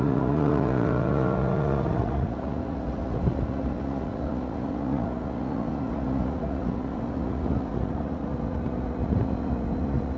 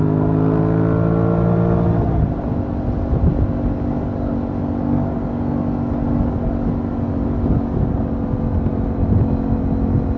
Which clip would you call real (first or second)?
second